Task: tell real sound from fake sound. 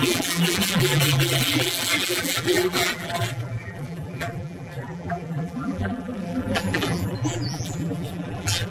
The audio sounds fake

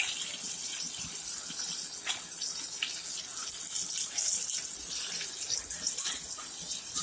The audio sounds real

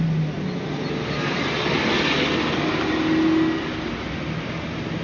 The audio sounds real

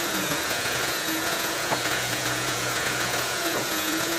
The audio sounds fake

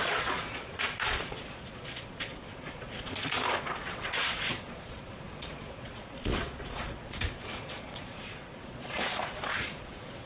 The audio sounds fake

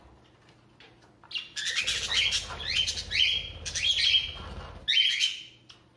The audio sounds real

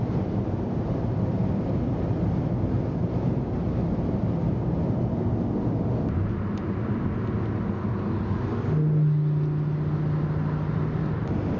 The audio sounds real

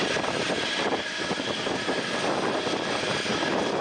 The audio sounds real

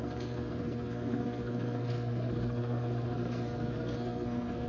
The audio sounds fake